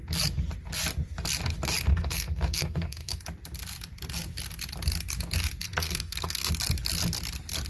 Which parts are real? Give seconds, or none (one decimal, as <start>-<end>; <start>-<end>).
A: 0.0-1.9; 3.2-5.6; 6.5-7.7